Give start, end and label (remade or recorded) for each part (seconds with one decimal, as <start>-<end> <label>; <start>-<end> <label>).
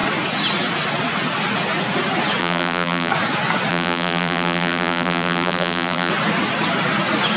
0.0-2.4 recorded; 2.4-3.1 remade; 3.1-3.7 recorded; 3.7-6.1 remade; 6.1-7.4 recorded